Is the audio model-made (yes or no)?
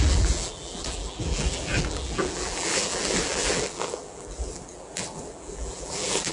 yes